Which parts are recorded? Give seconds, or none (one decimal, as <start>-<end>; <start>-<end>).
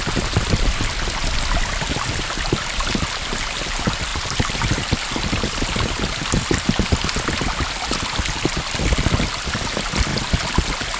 0.0-4.1; 5.1-11.0